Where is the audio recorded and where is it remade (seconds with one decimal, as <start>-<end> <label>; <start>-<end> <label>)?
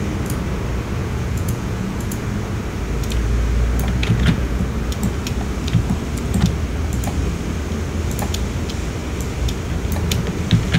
0.0-1.0 recorded; 1.0-2.2 remade; 2.2-4.0 recorded; 4.0-4.6 remade; 4.6-10.8 recorded